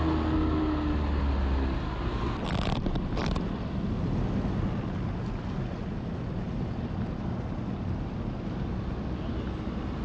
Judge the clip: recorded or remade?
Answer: recorded